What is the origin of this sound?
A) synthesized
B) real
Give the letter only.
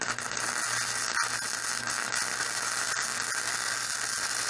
B